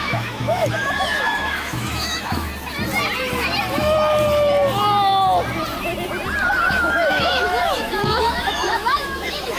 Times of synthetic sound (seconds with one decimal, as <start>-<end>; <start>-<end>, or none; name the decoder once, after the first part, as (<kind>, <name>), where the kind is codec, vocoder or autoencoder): 0.0-2.5 (autoencoder, DAC-VAE); 6.7-9.6